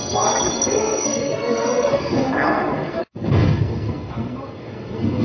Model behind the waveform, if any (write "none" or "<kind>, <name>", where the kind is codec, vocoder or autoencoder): codec, SNAC